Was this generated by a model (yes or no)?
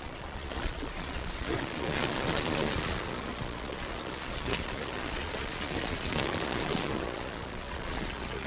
yes